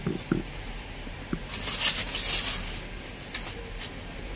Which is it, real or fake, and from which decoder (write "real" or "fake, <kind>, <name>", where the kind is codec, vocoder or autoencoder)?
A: real